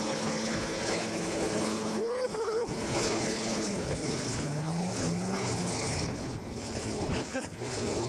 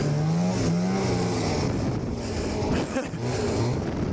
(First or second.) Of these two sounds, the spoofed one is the first